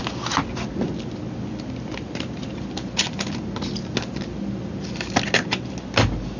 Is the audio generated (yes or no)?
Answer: no